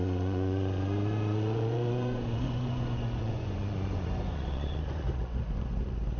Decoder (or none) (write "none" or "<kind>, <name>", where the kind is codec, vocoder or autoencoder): vocoder, Vocos